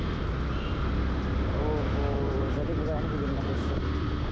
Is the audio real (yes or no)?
yes